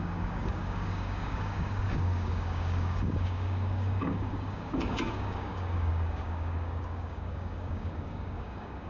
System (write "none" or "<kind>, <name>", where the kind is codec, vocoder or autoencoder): codec, DAC